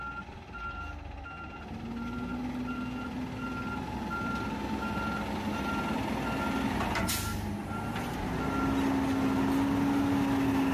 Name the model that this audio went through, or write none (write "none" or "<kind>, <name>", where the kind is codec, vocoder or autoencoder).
none